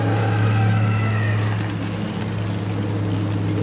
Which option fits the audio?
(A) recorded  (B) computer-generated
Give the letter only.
A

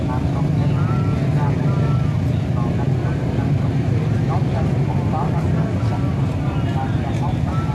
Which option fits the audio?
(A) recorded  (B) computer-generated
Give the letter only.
A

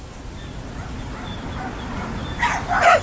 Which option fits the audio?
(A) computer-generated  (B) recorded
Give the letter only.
B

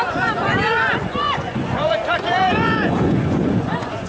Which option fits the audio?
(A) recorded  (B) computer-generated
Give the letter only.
B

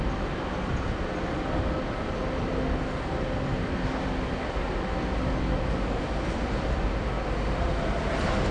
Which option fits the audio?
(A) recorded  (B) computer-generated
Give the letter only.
A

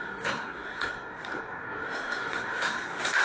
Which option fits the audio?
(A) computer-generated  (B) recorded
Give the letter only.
A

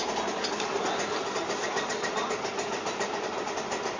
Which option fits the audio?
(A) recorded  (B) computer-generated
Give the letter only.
A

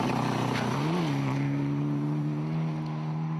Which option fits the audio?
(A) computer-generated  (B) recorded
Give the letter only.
B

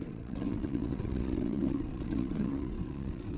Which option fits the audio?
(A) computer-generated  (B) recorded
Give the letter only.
A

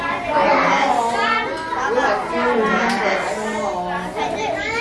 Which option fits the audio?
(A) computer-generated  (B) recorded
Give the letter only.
B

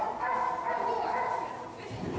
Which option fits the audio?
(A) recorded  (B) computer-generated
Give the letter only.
A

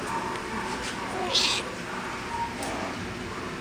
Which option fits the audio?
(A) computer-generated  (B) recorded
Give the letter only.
B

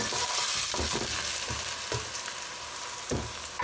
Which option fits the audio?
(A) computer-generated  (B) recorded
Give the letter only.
B